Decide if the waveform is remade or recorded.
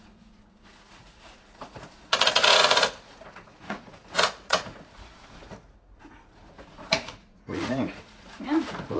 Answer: remade